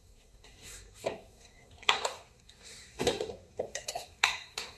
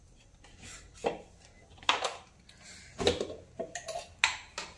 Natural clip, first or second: second